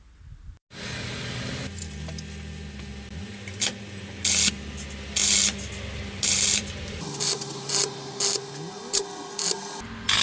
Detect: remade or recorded recorded